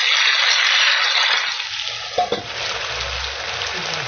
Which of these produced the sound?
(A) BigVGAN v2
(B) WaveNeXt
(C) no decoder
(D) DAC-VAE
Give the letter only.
C